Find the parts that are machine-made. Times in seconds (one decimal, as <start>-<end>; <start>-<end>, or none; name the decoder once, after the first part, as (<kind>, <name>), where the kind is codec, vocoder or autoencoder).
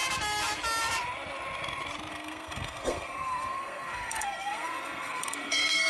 2.1-5.9 (codec, SNAC)